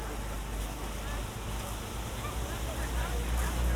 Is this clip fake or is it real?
real